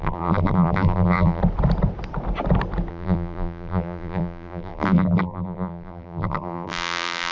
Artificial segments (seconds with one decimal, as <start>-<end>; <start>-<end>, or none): 0.0-1.4; 2.9-7.3